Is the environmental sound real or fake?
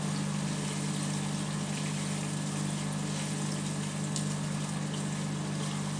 real